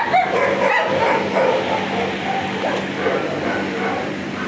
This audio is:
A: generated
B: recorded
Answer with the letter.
B